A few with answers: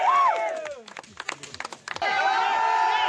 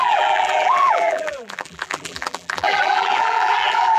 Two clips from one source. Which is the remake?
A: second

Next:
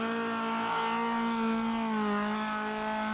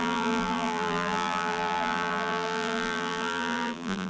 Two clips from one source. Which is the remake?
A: second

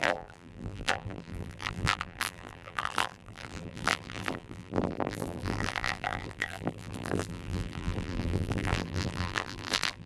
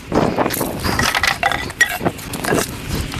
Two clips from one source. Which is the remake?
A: first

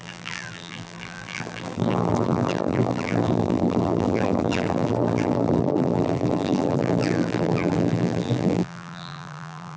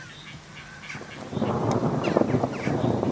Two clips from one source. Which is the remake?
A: first